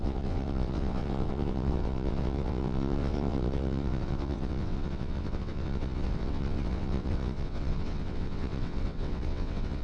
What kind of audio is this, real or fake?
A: fake